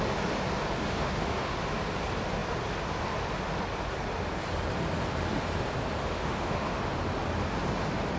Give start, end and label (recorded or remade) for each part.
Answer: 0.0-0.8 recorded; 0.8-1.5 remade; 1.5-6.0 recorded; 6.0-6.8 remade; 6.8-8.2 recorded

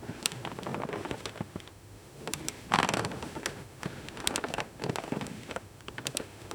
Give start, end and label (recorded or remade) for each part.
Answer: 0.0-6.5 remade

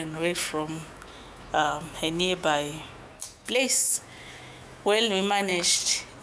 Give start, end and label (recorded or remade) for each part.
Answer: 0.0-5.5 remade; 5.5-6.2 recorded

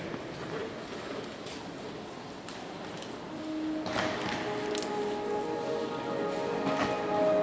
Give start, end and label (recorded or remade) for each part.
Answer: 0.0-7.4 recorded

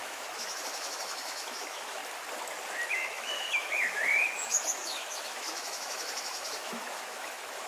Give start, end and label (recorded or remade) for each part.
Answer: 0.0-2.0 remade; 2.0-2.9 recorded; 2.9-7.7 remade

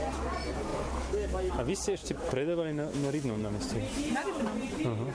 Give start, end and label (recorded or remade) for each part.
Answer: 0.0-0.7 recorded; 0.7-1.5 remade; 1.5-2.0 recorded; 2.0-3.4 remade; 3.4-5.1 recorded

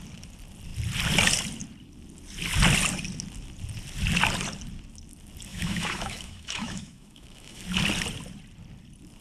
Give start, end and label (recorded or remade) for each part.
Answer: 0.0-5.5 recorded; 5.5-7.6 remade; 7.6-9.2 recorded

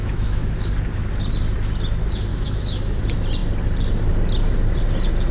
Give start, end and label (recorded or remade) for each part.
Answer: 0.0-0.7 remade; 0.7-2.3 recorded; 2.3-3.0 remade; 3.0-5.3 recorded